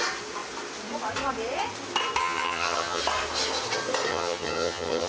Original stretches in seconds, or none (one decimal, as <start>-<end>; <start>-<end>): 0.0-2.2; 3.0-4.1